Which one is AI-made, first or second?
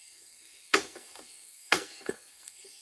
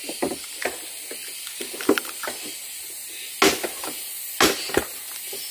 first